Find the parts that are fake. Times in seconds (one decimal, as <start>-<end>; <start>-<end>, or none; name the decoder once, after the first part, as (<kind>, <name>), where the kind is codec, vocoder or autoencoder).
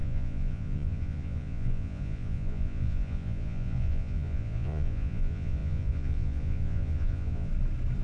0.0-7.5 (vocoder, Vocos)